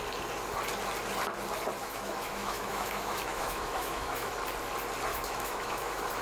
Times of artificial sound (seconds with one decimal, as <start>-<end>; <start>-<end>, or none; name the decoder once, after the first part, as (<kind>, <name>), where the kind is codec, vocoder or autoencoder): 1.8-4.3 (autoencoder, DAC-VAE); 5.1-6.2